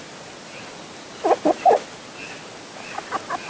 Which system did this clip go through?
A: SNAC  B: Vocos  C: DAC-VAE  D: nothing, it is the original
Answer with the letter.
D